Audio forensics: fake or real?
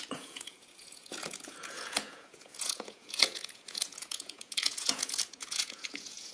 fake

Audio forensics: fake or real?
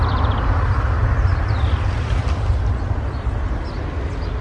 real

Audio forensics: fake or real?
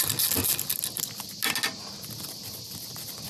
real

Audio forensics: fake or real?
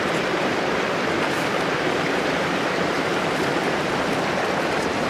fake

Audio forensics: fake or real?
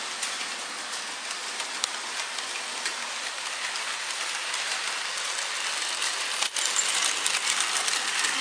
real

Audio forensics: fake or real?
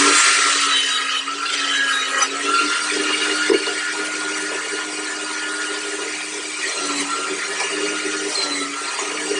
real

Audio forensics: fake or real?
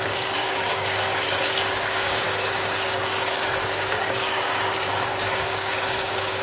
fake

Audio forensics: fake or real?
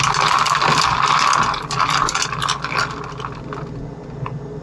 real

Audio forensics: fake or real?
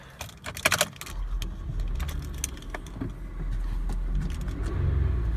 real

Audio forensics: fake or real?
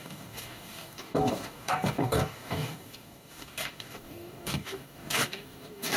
fake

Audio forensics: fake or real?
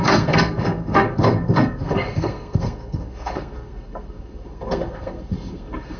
fake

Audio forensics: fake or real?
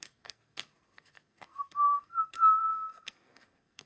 fake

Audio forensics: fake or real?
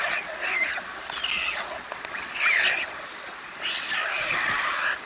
real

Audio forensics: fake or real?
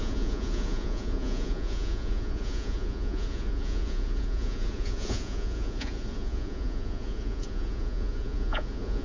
fake